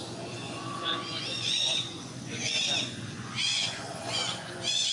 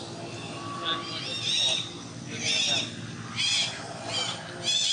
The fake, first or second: first